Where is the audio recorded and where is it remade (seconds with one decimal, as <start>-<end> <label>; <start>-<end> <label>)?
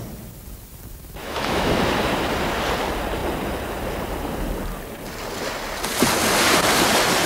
0.0-1.2 recorded; 1.2-1.7 remade; 1.7-7.3 recorded